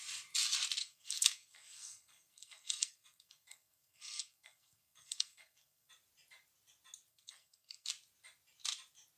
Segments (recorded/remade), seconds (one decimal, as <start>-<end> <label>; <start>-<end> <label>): 0.0-0.8 recorded; 0.8-5.9 remade; 5.9-7.1 recorded; 7.1-7.9 remade; 7.9-9.2 recorded